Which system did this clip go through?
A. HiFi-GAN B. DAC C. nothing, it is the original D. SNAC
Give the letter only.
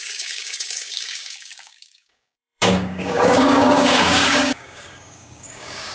B